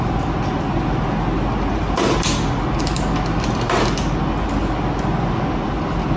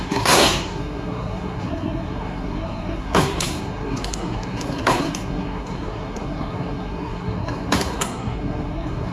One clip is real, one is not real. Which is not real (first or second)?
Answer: second